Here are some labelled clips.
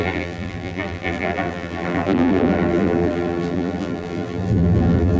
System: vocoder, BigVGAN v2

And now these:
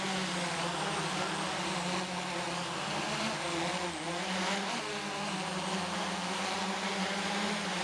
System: none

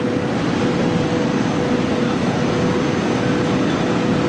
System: none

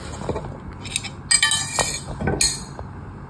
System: none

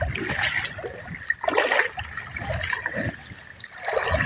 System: none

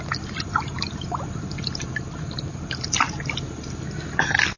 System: none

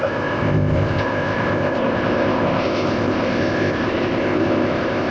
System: codec, ZipCodec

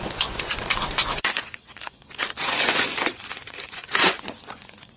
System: vocoder, Vocos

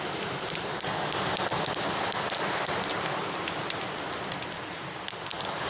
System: none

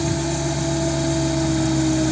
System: none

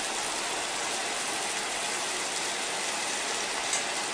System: none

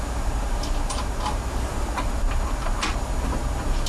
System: none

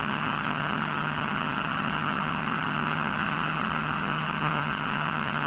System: vocoder, HiFi-GAN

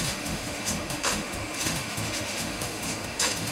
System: autoencoder, DAC-VAE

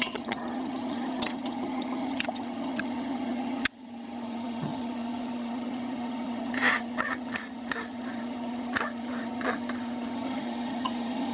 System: vocoder, HiFi-GAN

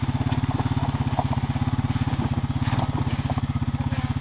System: none